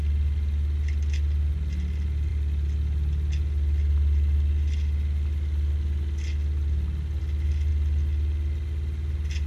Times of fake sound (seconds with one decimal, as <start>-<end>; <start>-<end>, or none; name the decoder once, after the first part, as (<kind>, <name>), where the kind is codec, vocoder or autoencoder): none